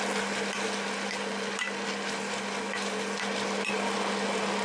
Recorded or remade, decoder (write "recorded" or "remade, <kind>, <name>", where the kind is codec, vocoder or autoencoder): recorded